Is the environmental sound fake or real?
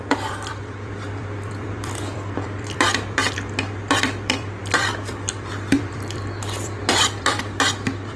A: fake